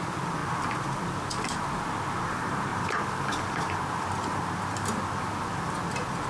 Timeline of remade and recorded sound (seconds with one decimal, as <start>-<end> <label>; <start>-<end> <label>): 0.0-6.3 recorded